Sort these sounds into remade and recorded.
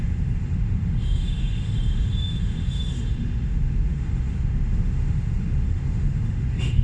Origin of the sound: remade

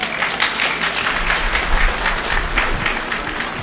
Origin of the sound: recorded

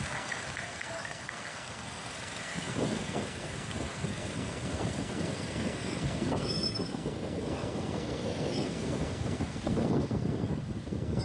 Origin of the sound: remade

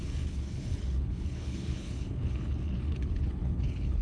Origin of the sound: remade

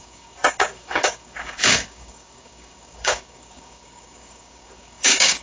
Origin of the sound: remade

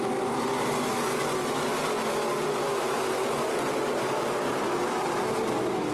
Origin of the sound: recorded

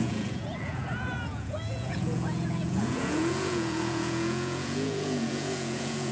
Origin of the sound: remade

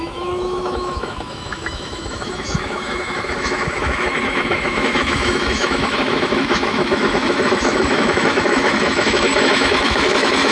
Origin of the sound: remade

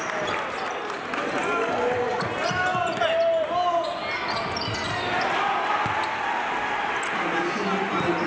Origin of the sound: recorded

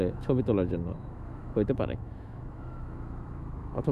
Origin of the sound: remade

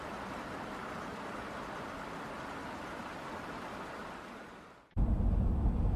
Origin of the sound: recorded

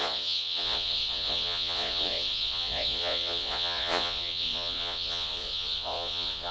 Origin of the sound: remade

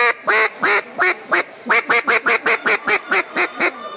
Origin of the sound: recorded